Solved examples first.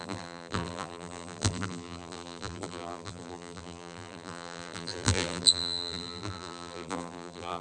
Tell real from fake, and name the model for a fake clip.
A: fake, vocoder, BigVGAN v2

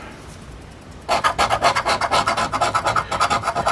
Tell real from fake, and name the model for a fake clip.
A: real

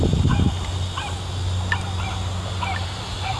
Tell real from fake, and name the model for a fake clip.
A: real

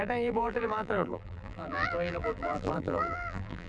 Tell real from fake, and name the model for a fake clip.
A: fake, vocoder, BigVGAN v2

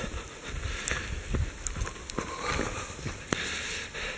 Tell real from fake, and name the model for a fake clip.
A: real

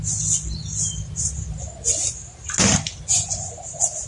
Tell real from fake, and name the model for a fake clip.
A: real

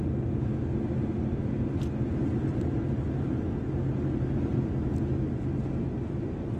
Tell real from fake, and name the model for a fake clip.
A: real